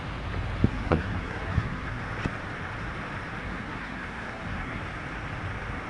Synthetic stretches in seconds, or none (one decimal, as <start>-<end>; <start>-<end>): 0.7-2.0; 3.4-4.8